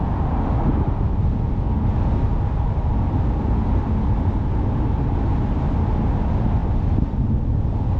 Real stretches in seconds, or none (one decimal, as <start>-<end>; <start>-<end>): 0.0-8.0